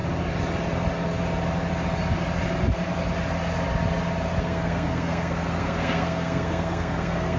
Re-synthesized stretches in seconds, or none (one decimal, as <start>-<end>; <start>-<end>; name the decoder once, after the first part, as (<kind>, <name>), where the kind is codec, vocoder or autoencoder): 4.4-7.4 (codec, SNAC)